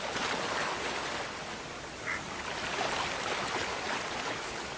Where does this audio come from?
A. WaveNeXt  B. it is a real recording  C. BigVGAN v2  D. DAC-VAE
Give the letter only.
B